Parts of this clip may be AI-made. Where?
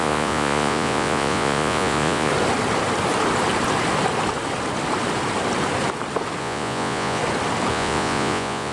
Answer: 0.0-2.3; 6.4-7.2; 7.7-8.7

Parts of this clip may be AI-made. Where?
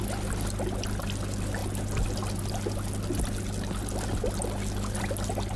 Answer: none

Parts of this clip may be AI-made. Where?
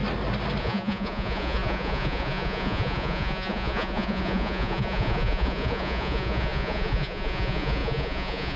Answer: 0.6-8.6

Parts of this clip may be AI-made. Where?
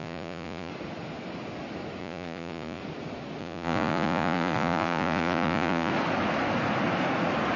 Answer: 0.0-0.7; 2.0-2.8; 3.4-5.9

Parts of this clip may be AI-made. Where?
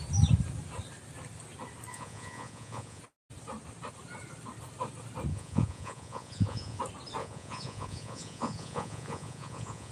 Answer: 1.9-3.0; 5.3-6.8; 7.2-9.9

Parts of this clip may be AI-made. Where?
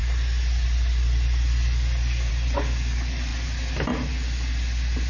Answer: none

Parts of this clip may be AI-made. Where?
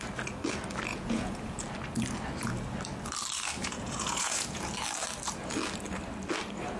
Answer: 0.9-1.6; 3.6-4.6